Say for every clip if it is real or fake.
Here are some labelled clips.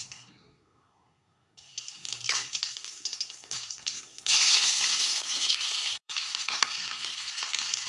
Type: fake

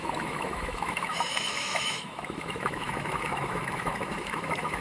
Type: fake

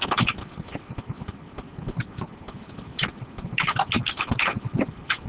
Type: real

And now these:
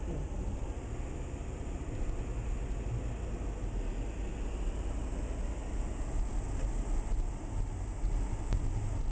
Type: real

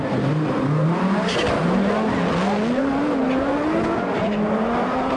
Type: real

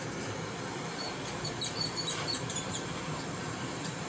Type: fake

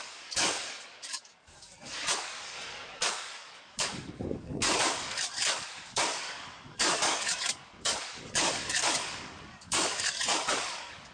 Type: fake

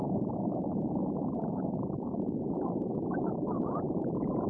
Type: fake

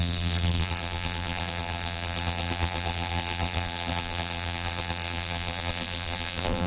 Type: fake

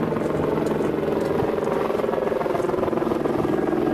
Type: real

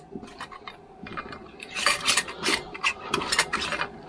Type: real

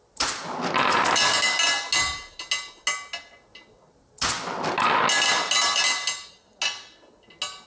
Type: real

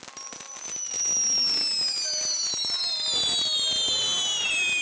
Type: real